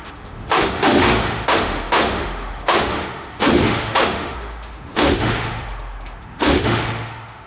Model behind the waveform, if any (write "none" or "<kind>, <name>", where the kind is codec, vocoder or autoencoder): autoencoder, DAC-VAE